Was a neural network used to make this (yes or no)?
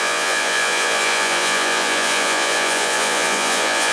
yes